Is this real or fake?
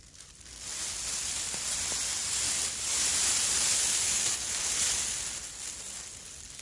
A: real